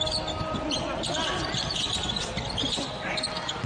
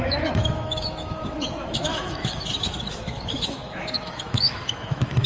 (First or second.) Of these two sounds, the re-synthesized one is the second